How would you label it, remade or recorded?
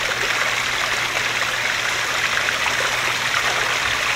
recorded